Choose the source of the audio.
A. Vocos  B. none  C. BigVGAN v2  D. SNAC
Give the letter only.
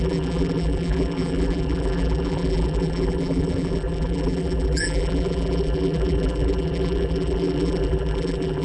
C